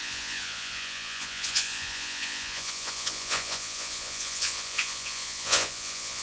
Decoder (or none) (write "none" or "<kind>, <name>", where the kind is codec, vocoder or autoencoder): vocoder, Vocos